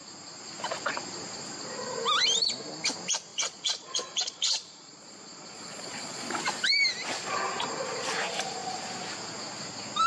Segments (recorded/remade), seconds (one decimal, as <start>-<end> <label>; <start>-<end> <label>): 0.0-3.3 recorded; 3.3-6.4 remade; 6.4-10.1 recorded